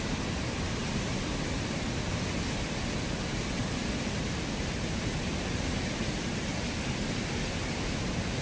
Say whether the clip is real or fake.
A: real